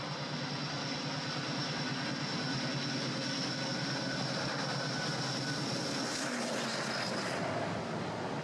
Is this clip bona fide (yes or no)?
yes